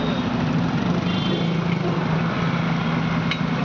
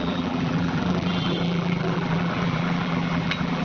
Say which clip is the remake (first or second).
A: second